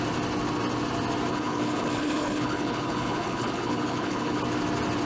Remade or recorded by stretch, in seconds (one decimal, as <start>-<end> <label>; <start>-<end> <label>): 0.0-1.3 recorded; 1.3-4.4 remade; 4.4-5.1 recorded